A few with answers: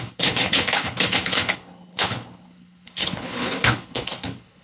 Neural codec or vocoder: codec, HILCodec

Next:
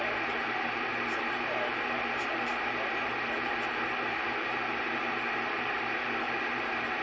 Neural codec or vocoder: vocoder, BigVGAN v2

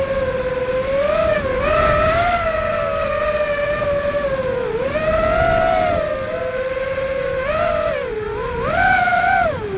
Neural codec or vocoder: none